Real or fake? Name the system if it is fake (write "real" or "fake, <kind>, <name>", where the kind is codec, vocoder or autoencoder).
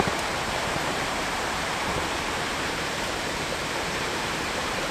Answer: fake, vocoder, BigVGAN v2